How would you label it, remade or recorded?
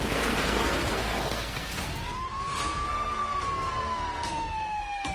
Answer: remade